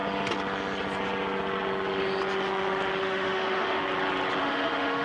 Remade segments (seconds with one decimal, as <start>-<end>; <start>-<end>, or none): 3.0-3.8; 4.4-5.0